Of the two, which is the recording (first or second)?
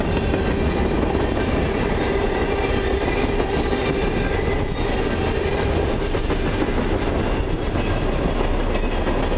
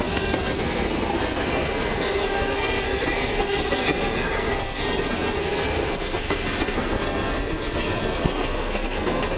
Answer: first